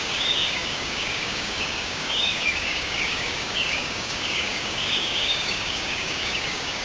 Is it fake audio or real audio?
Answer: fake